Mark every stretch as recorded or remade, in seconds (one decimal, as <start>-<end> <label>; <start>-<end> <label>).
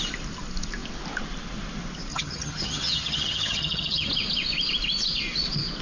0.0-2.1 recorded; 2.1-4.1 remade; 4.1-5.8 recorded